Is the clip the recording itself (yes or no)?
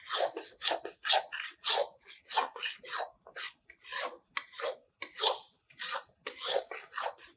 yes